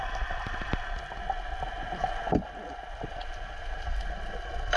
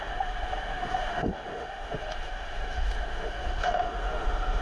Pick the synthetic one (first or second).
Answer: second